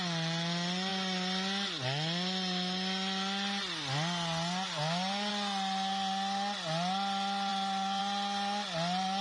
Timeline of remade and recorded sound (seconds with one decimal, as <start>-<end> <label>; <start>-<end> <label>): 0.0-9.2 recorded